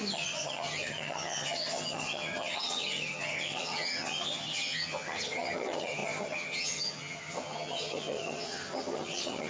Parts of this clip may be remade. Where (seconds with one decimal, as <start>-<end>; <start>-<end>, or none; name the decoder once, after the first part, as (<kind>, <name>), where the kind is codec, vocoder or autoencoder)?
0.0-9.5 (vocoder, HiFi-GAN)